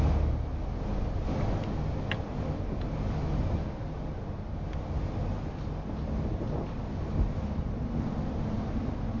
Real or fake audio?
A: real